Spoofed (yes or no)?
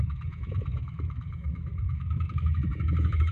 yes